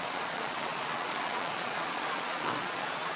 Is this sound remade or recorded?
remade